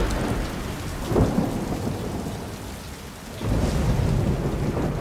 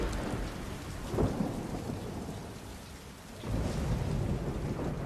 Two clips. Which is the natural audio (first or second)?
first